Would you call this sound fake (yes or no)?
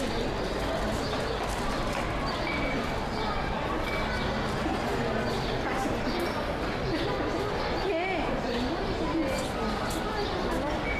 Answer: no